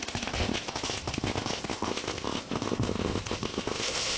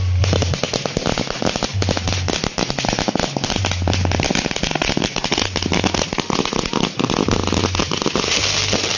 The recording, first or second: second